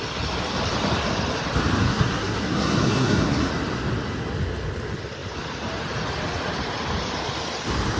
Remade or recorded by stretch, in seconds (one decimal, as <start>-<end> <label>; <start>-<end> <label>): 0.0-1.8 recorded; 1.8-3.5 remade; 3.5-8.0 recorded